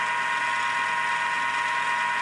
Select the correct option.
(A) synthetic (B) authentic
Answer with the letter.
B